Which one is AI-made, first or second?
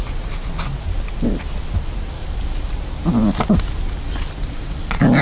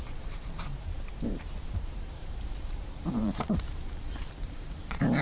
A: second